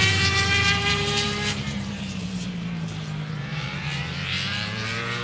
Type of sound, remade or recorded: remade